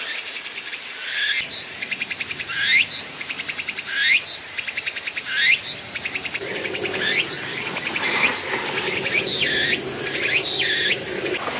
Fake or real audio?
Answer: real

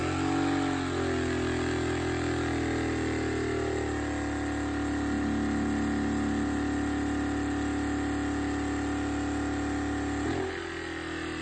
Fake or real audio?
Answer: real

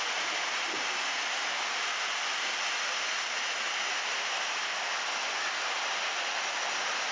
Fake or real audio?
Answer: real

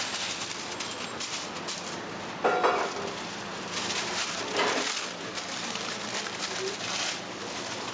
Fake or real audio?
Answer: fake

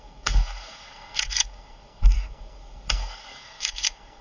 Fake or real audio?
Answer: fake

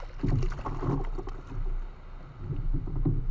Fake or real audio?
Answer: real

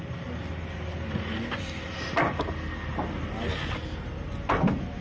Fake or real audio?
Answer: real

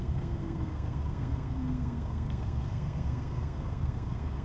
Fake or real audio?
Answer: fake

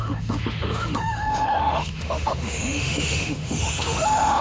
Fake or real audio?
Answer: fake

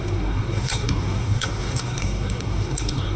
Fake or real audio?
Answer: fake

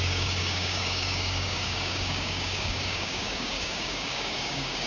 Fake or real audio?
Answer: fake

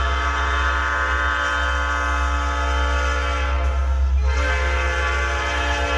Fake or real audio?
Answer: real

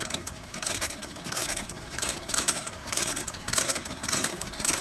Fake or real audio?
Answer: fake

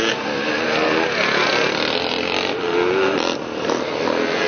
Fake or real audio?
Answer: real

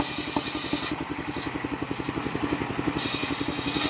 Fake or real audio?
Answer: real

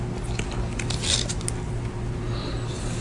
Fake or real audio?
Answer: real